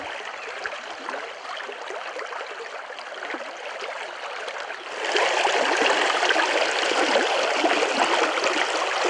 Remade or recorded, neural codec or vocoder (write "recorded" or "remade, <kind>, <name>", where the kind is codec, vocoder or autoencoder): recorded